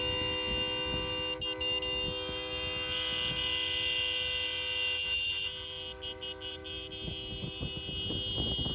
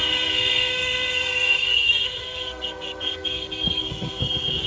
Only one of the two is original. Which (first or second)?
first